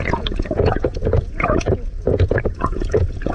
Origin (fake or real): fake